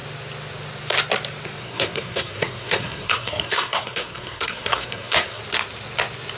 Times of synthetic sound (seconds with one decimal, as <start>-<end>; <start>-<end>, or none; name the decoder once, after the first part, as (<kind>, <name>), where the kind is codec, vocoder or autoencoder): 1.6-5.4 (codec, SNAC)